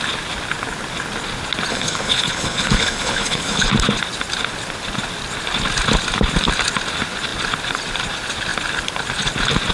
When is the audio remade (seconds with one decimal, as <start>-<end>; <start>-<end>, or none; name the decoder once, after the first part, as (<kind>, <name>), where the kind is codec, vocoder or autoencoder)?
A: 1.7-3.7 (codec, HILCodec)